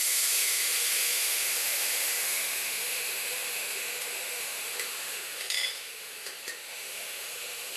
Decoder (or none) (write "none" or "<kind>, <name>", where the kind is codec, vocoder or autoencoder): autoencoder, DAC-VAE